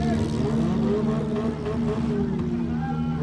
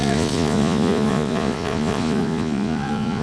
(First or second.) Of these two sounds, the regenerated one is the second